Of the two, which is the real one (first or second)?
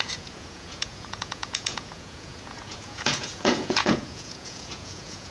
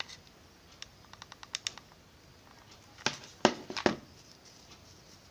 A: second